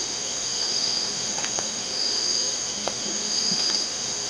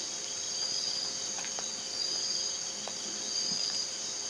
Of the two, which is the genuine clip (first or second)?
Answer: second